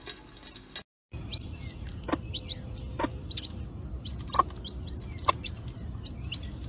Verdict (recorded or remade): recorded